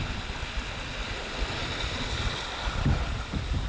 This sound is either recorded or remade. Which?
recorded